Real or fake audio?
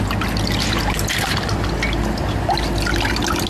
real